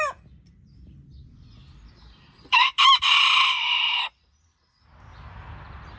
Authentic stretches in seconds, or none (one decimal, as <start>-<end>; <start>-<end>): 0.0-1.6; 4.5-6.0